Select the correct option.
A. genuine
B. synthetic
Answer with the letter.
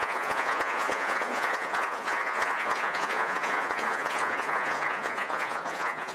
B